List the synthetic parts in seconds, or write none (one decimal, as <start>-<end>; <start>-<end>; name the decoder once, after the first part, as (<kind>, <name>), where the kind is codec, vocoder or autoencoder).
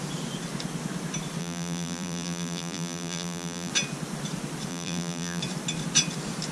1.4-3.7 (vocoder, BigVGAN v2); 4.7-5.4